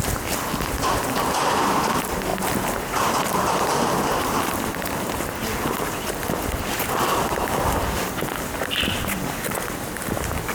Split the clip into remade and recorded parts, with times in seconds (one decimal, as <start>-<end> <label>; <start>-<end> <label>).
0.0-10.5 recorded

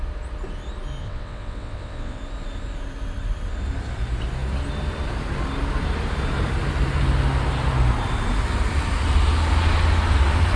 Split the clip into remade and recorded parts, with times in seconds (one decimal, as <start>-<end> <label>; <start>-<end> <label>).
0.0-1.0 recorded; 1.0-2.2 remade; 2.2-10.6 recorded